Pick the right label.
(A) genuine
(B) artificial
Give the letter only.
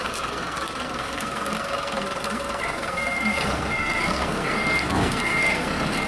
B